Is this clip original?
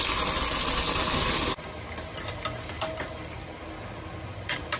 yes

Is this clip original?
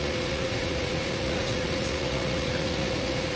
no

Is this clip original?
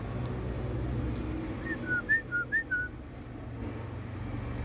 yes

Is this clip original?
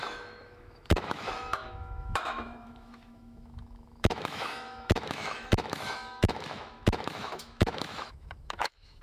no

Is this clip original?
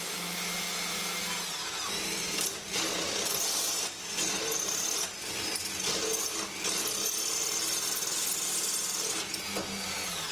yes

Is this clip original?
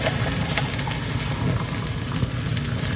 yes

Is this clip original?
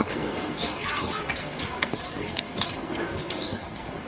no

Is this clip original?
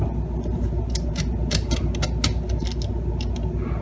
yes